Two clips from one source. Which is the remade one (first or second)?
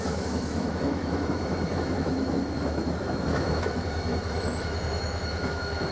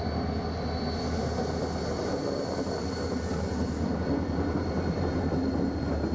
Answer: first